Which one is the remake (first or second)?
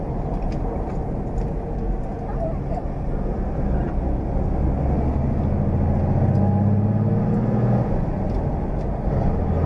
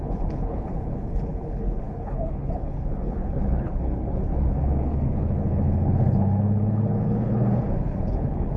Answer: second